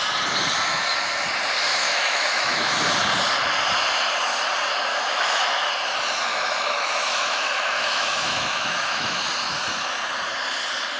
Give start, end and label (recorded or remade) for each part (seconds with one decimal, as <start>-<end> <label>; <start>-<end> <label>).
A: 0.0-1.7 recorded; 1.7-2.7 remade; 2.7-4.9 recorded; 4.9-5.7 remade; 5.7-6.3 recorded; 6.3-9.2 remade; 9.2-11.0 recorded